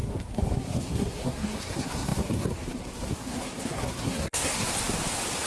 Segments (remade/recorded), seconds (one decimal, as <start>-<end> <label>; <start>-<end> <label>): 0.0-4.7 remade; 4.7-5.5 recorded